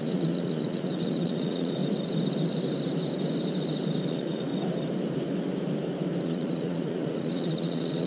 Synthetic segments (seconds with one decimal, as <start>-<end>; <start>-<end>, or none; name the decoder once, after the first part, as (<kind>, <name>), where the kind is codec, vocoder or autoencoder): 0.0-1.8 (vocoder, Vocos); 4.1-4.5; 6.2-8.1